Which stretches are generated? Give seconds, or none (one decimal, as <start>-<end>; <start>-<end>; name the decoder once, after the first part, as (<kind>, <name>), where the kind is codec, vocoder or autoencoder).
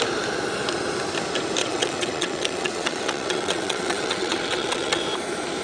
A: 1.6-5.0 (vocoder, WaveNeXt)